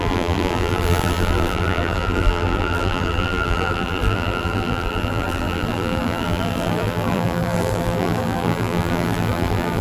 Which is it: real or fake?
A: fake